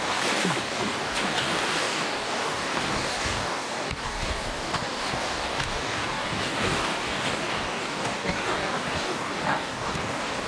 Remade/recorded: remade